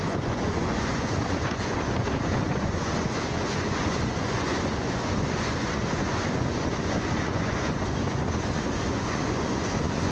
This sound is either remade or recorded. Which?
remade